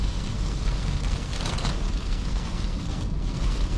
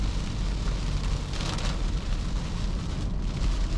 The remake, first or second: first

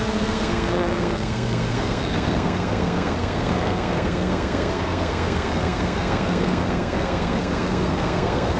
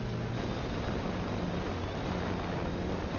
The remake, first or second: first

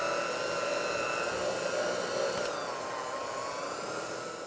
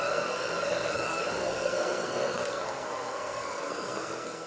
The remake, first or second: second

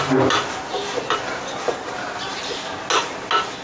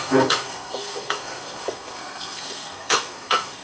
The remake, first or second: second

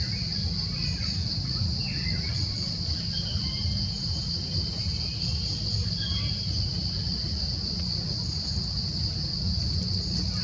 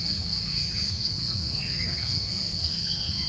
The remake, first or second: second